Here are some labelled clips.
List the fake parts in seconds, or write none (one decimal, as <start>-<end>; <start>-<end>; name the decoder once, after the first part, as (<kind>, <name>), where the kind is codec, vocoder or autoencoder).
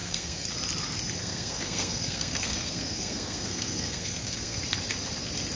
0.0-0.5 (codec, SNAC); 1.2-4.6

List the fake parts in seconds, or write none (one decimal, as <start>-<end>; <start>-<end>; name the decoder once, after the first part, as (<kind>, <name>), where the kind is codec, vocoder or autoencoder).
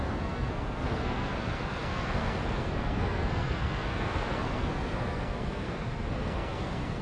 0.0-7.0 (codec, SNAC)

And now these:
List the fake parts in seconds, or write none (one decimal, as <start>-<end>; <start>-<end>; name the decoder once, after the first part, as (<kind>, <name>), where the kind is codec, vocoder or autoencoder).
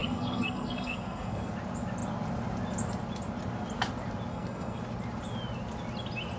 0.0-1.5 (codec, SNAC); 4.3-4.8